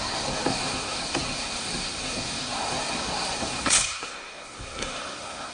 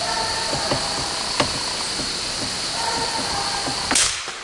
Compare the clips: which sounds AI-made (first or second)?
first